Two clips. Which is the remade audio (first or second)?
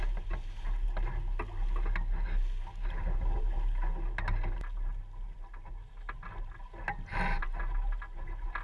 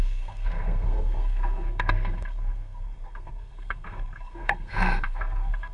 second